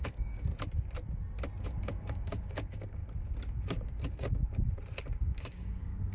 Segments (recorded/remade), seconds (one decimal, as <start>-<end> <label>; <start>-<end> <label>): 0.0-0.5 remade; 0.5-1.6 recorded; 1.6-3.0 remade; 3.0-3.6 recorded; 3.6-4.4 remade; 4.4-5.0 recorded; 5.0-6.1 remade